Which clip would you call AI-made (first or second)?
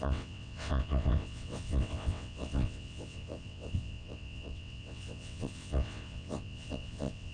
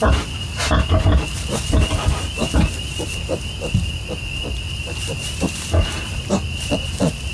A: first